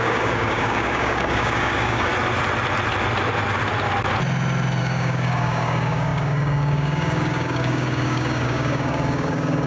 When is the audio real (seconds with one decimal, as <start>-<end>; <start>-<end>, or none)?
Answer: 2.1-4.8